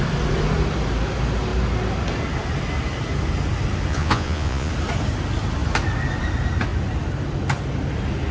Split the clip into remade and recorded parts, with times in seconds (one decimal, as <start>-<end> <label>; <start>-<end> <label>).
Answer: 0.0-3.9 recorded; 3.9-4.7 remade; 4.7-8.3 recorded